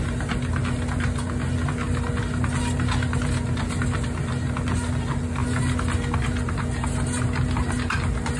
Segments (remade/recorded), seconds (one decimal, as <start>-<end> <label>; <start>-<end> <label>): 0.0-8.4 recorded